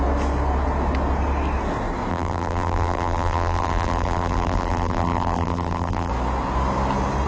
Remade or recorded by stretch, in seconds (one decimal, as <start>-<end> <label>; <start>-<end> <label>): 0.0-2.1 recorded; 2.1-6.1 remade; 6.1-7.3 recorded